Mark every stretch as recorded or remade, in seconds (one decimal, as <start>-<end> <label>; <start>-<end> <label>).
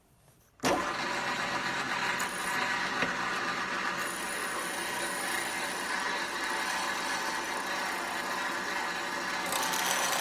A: 0.0-10.2 recorded